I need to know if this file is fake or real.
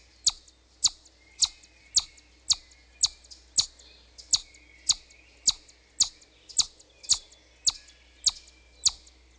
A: real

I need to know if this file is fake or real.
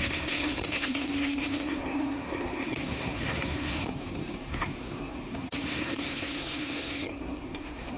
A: fake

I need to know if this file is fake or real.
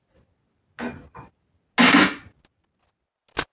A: real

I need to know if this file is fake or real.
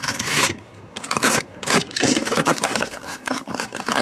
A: fake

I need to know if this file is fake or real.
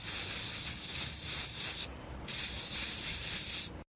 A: real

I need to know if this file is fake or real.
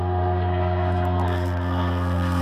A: fake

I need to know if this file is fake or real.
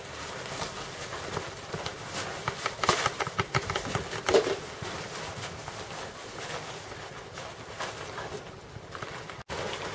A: real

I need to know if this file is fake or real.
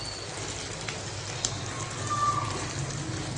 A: real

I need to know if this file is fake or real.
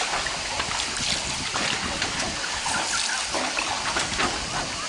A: real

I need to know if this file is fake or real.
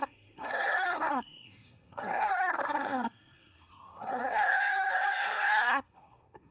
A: fake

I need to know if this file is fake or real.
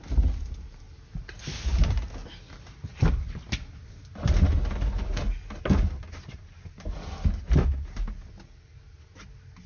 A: real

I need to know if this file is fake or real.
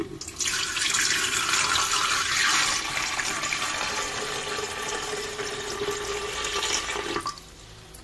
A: real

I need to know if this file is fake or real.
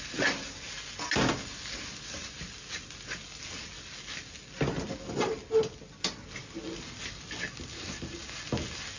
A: real